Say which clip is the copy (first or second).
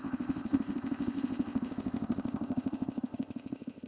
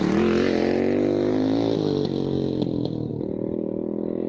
first